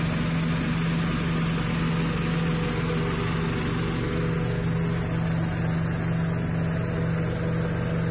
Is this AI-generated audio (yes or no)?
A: no